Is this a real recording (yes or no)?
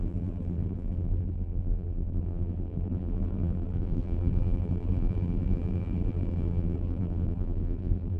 no